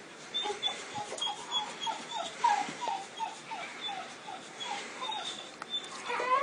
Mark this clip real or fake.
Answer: fake